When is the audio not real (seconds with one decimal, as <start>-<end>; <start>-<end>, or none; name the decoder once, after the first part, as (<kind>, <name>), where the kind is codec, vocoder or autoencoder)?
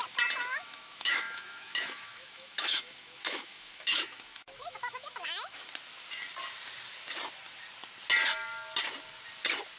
0.5-5.6 (autoencoder, DAC-VAE)